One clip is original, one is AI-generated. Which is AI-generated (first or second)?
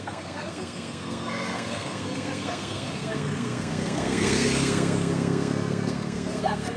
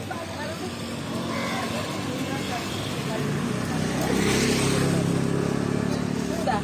first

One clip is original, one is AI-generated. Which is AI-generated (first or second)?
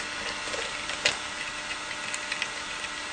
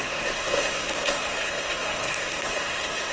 second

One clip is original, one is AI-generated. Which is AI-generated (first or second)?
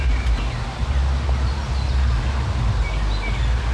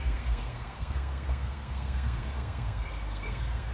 second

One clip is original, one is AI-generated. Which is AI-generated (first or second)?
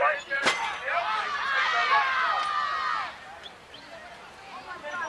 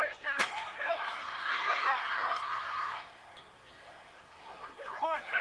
second